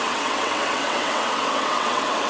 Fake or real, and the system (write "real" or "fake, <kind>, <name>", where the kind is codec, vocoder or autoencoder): fake, vocoder, WaveNeXt